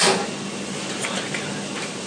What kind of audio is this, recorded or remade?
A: recorded